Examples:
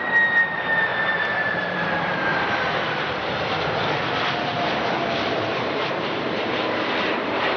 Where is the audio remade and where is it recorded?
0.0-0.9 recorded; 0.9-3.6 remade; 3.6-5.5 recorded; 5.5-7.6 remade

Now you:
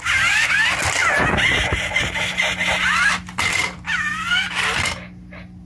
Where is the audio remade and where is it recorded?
0.0-3.5 recorded; 3.5-4.5 remade; 4.5-5.7 recorded

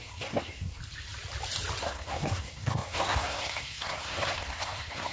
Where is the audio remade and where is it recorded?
0.0-0.8 remade; 0.8-1.8 recorded; 1.8-5.1 remade

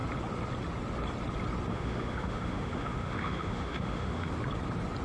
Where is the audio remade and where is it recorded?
0.0-1.7 recorded; 1.7-4.3 remade; 4.3-5.0 recorded

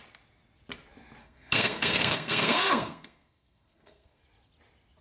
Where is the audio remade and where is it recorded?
0.0-1.2 recorded; 1.2-4.2 remade; 4.2-5.0 recorded